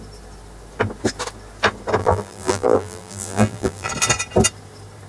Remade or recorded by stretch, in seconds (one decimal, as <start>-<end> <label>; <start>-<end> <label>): 0.0-2.0 recorded; 2.0-3.9 remade; 3.9-5.1 recorded